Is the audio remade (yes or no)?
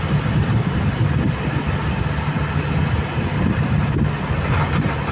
no